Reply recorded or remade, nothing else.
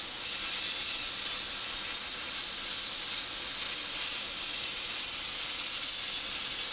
recorded